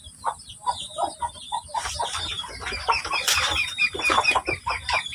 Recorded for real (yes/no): no